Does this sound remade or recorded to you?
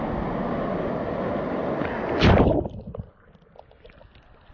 recorded